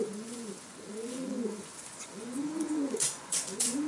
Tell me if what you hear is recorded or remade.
remade